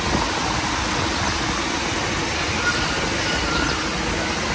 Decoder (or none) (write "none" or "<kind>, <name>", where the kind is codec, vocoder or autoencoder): none